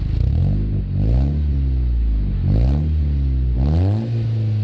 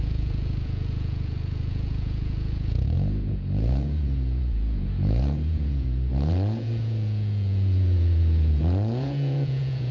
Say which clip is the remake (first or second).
second